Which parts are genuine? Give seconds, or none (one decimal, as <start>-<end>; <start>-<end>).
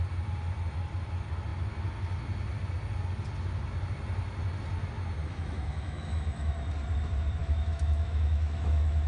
0.0-5.2; 6.5-7.4